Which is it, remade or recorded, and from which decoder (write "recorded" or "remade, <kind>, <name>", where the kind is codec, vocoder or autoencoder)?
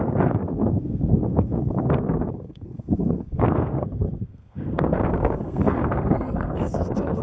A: remade, codec, SNAC